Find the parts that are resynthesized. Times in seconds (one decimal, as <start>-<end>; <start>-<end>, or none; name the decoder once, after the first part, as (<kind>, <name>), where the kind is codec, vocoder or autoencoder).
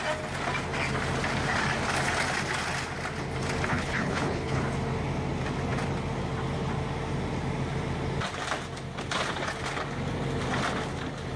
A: 3.7-4.6 (codec, HILCodec)